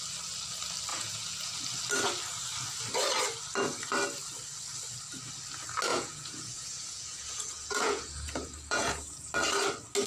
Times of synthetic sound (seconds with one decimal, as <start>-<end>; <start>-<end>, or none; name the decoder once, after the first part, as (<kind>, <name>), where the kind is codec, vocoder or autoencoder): 0.9-1.6 (vocoder, Vocos); 5.9-9.2